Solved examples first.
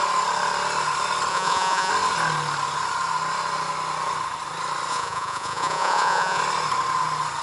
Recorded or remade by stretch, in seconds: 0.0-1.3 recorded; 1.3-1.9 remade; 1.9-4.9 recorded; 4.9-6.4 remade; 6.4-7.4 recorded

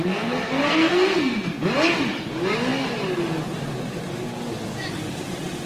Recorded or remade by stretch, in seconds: 0.0-1.6 remade; 1.6-5.7 recorded